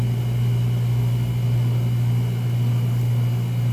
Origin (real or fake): real